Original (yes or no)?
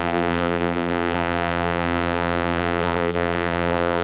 no